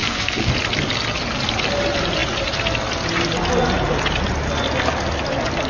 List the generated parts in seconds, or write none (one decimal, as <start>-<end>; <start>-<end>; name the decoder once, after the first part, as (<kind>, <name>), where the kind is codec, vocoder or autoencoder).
0.0-0.5 (codec, SNAC)